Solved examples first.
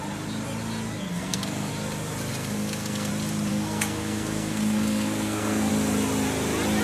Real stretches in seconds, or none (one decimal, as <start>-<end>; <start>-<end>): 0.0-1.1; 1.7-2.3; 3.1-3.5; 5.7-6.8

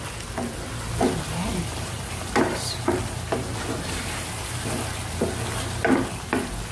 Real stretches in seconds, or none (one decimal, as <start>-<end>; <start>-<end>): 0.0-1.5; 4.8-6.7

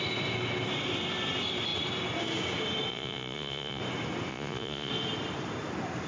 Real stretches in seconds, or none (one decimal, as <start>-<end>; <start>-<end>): 0.0-2.9; 3.8-4.3; 4.9-6.1

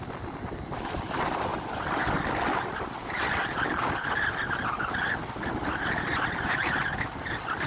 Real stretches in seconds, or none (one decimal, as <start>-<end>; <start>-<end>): 0.0-7.7